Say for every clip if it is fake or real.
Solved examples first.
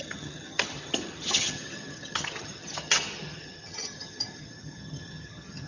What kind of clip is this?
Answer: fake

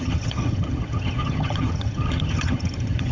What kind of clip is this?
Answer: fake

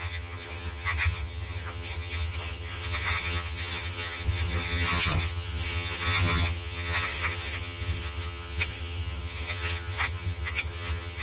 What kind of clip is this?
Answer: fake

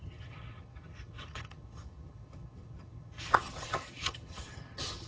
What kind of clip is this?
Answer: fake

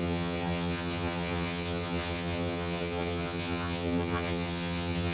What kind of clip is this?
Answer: fake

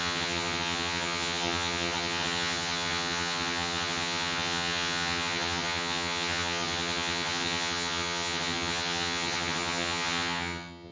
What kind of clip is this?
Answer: fake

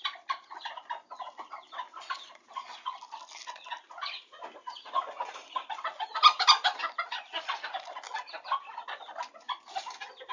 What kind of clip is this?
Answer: real